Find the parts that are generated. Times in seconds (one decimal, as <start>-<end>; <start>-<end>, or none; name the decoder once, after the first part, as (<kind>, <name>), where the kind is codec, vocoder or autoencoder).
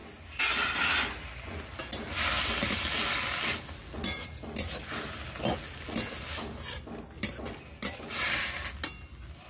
none